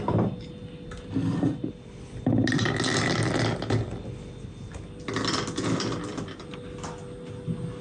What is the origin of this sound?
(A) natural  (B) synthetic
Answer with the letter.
A